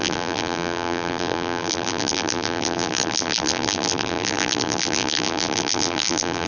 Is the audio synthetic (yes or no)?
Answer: yes